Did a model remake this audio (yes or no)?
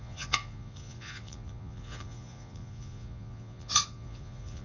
yes